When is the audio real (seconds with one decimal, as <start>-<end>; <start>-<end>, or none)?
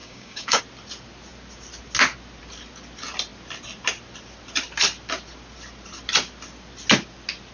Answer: 0.6-7.5